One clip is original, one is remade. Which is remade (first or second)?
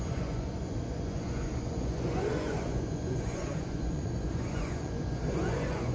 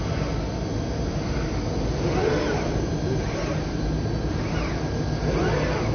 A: first